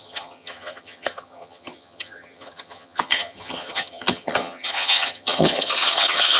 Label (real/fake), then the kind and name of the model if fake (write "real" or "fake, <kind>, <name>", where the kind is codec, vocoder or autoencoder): fake, vocoder, HiFi-GAN